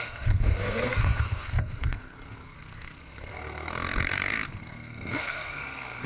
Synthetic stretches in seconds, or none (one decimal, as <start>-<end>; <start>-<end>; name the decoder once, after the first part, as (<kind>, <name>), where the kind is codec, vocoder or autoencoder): 0.0-6.1 (codec, SNAC)